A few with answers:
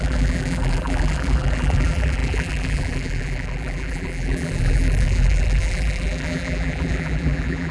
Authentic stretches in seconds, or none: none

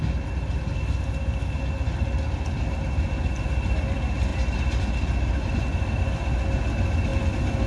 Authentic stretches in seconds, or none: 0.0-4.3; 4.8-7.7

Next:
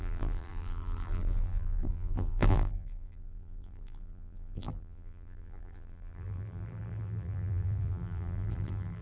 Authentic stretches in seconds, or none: none

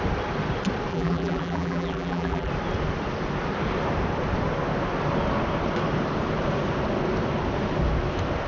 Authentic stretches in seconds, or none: 0.0-0.9; 2.5-8.5

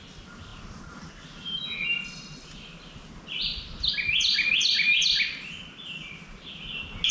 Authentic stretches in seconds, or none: 0.0-7.1

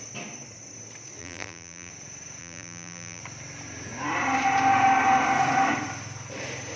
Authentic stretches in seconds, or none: 0.0-1.2; 1.9-2.4; 3.2-6.8